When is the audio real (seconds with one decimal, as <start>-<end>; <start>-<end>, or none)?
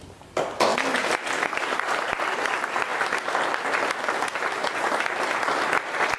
0.0-6.2